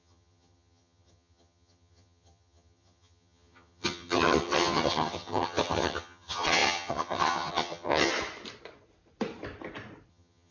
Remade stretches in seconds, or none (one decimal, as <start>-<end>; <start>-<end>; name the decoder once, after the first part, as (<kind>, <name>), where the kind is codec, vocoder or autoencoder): 0.0-8.1 (vocoder, HiFi-GAN); 10.1-10.5